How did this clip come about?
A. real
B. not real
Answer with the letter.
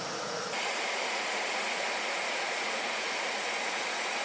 B